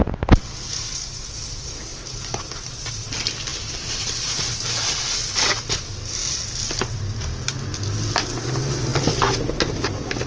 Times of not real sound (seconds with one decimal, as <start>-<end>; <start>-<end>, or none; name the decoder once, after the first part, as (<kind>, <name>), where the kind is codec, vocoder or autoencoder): 3.5-5.5 (vocoder, BigVGAN v2)